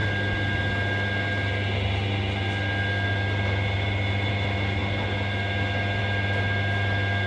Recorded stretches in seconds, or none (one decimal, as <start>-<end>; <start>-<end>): 0.0-7.3